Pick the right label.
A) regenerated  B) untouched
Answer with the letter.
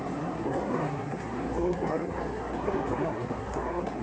A